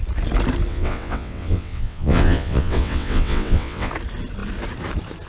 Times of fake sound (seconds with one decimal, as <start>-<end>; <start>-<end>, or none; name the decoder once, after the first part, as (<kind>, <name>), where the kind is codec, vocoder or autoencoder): 0.7-3.9 (vocoder, WaveNeXt)

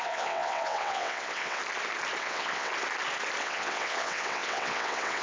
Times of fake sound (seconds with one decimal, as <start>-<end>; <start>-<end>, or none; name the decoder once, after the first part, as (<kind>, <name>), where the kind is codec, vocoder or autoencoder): 0.0-1.6 (vocoder, WaveNeXt); 2.2-2.7; 3.4-5.2